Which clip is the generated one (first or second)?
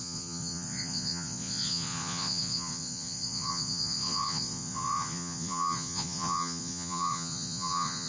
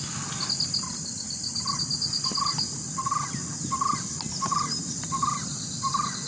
first